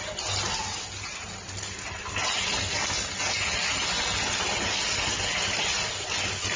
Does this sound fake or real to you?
real